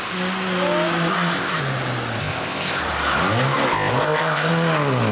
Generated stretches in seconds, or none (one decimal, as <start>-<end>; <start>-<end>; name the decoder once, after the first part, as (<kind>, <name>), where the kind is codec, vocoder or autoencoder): 1.1-1.6 (codec, ZipCodec); 2.2-2.8; 3.7-4.5